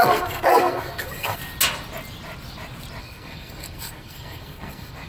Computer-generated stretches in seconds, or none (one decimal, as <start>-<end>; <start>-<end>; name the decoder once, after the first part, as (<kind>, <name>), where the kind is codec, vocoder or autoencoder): 0.0-1.4 (codec, SNAC); 3.0-5.1